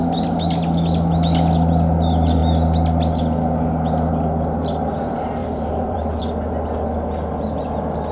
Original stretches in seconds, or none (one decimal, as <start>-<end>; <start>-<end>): 0.0-5.4; 6.2-8.1